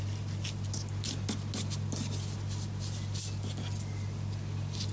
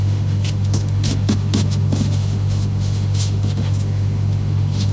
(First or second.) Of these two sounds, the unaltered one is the first